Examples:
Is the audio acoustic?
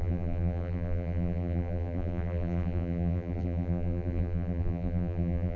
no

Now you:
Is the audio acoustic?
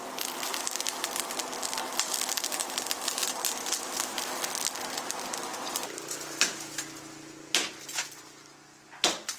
yes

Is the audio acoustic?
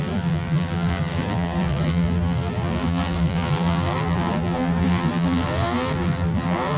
no